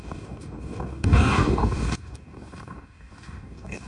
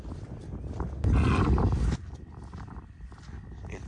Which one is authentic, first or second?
second